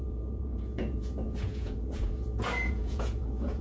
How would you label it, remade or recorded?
remade